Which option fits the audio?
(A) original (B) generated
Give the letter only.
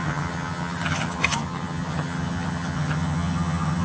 B